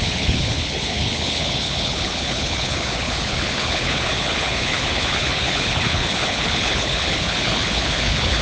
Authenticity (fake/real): fake